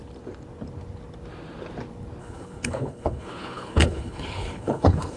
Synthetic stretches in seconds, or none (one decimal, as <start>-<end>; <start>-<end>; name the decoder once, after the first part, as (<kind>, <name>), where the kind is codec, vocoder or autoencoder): 2.2-5.2 (codec, HILCodec)